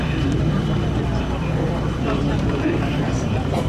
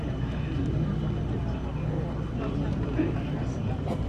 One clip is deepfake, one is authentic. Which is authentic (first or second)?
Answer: second